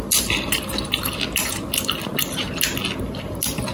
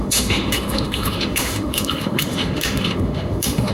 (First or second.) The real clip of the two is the first